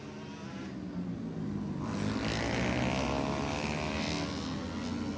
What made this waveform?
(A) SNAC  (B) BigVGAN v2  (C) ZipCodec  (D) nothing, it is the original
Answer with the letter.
D